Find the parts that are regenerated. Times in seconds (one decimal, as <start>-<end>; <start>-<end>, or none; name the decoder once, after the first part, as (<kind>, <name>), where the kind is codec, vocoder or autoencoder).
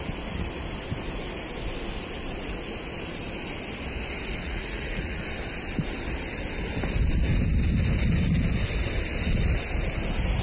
4.4-5.2 (vocoder, Vocos)